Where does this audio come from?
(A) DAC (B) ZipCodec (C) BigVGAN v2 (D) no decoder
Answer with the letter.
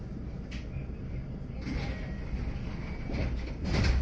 D